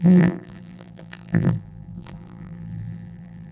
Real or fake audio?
fake